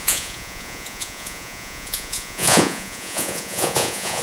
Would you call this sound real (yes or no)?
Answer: no